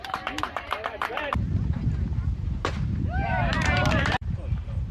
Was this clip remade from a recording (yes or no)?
yes